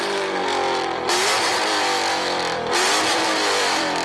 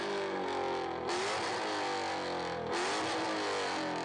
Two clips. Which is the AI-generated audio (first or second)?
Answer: first